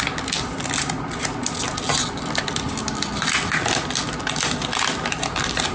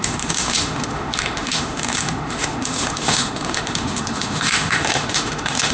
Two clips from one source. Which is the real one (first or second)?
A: first